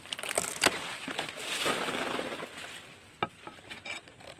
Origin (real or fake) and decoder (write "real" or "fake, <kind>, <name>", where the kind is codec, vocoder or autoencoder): real